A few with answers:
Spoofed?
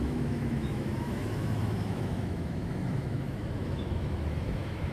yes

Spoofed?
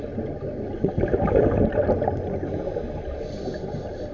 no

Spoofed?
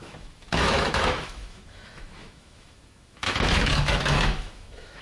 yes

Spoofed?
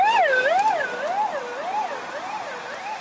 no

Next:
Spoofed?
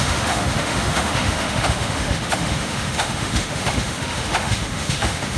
yes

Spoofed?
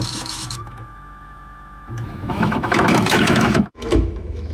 yes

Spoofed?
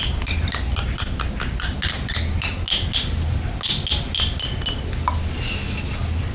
no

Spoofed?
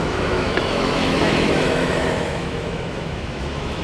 yes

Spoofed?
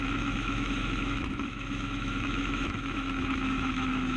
yes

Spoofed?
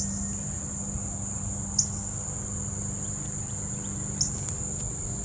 no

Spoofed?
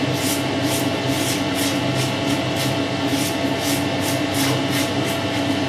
no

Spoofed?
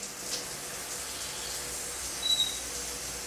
no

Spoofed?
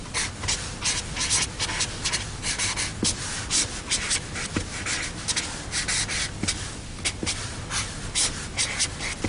no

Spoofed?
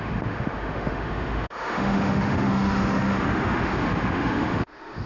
yes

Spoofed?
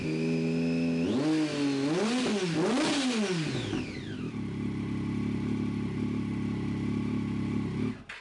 no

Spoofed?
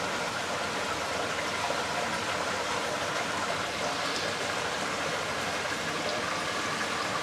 no